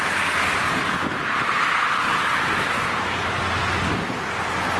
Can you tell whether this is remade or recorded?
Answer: recorded